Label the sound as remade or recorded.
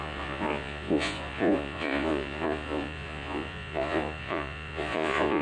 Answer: remade